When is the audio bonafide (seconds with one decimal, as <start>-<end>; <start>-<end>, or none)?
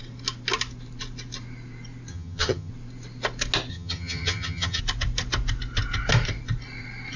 0.0-2.1; 2.7-3.7; 4.8-7.2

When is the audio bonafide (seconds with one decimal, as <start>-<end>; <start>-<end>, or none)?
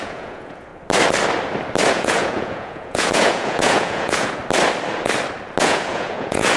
0.7-1.9; 4.4-5.6